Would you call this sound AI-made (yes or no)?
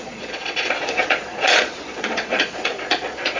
yes